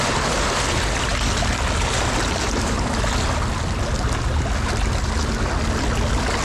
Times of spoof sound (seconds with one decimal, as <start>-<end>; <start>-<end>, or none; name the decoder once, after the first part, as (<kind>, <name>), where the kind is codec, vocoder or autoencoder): none